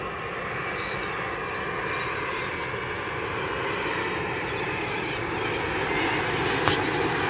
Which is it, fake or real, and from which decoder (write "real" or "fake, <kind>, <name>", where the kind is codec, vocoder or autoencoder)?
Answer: real